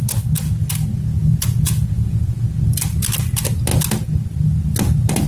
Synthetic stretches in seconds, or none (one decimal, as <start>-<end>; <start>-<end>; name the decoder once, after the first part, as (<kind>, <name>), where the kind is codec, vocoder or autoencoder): 1.1-2.4 (vocoder, Vocos)